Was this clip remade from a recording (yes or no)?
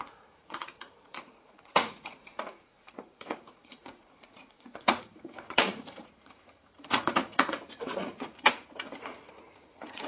yes